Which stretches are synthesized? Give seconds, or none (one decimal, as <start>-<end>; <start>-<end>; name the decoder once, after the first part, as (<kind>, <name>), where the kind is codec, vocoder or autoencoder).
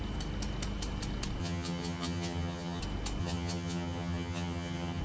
1.4-2.8 (vocoder, HiFi-GAN); 3.2-5.0